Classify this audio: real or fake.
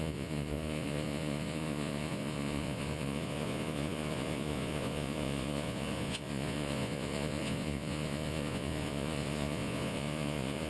fake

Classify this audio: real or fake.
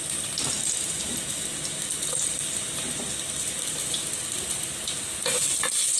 real